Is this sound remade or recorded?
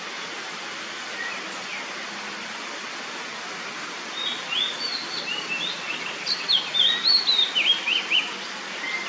recorded